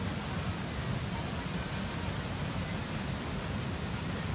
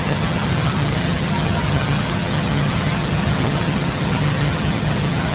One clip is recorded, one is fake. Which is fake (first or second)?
second